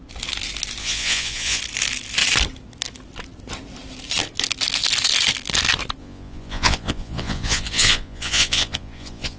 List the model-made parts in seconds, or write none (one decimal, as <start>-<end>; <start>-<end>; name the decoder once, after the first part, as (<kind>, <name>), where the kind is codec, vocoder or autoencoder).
0.8-1.6 (vocoder, Vocos); 6.0-9.4